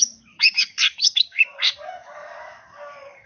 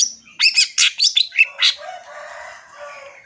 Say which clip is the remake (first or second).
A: first